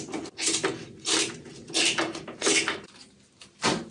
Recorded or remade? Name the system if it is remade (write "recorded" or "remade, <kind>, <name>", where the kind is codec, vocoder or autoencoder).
recorded